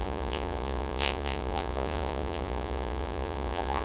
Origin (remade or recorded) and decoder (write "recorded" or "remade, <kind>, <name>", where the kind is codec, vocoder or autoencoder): remade, vocoder, Vocos